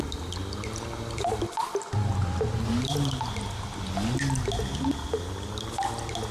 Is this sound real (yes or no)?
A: yes